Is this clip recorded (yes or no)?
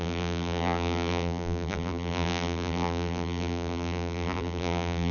no